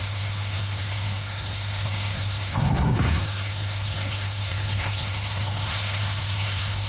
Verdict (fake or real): fake